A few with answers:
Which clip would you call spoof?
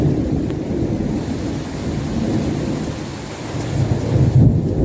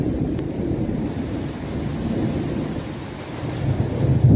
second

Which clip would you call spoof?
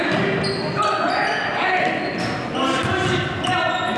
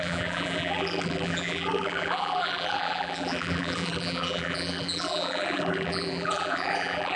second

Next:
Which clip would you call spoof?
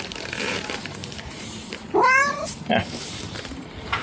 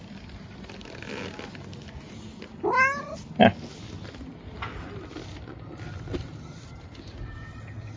first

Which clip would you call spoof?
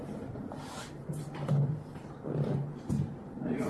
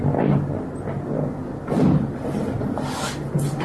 first